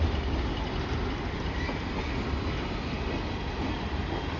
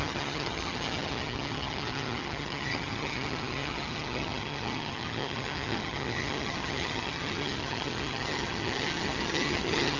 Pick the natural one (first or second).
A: first